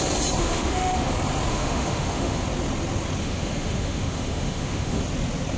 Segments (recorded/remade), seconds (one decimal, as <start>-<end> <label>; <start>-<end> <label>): 0.0-0.4 recorded; 0.4-1.1 remade; 1.1-1.5 recorded; 1.5-2.4 remade; 2.4-3.2 recorded; 3.2-5.0 remade; 5.0-5.6 recorded